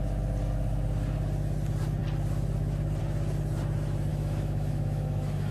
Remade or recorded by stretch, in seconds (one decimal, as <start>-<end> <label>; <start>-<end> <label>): 0.0-4.1 recorded; 4.1-5.5 remade